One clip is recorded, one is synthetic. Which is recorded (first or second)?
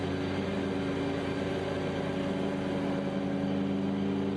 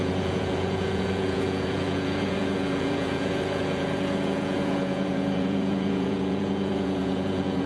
first